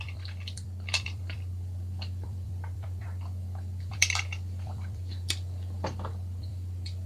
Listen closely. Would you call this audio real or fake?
fake